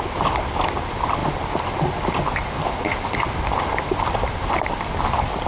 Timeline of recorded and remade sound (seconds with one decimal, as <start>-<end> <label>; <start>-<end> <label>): 0.0-5.5 recorded